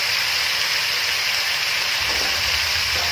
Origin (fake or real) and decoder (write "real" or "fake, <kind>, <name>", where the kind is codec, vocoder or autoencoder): real